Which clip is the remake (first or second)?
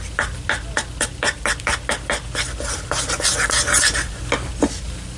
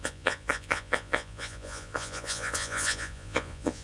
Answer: second